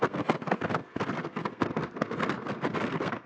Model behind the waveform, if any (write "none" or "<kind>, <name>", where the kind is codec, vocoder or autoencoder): codec, SNAC